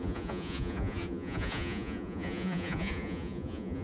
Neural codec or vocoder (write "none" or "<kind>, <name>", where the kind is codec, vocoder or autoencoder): vocoder, Vocos